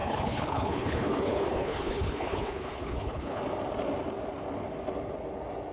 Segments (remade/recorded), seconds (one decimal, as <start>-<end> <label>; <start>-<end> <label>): 0.0-3.4 remade; 3.4-5.7 recorded